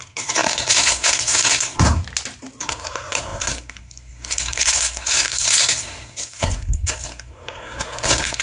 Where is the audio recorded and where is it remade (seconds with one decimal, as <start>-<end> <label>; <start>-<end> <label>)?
0.0-2.0 remade; 2.0-2.6 recorded; 2.6-8.4 remade